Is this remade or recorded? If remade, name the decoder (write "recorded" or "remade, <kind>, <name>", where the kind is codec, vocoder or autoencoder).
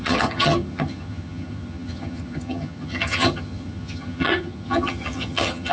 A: remade, vocoder, HiFi-GAN